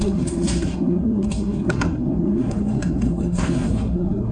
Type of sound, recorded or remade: remade